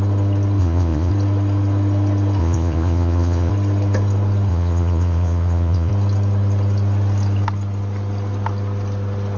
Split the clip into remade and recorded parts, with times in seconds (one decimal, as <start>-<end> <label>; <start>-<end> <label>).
0.0-0.6 recorded; 0.6-1.1 remade; 1.1-2.4 recorded; 2.4-3.5 remade; 3.5-4.5 recorded; 4.5-5.9 remade; 5.9-9.4 recorded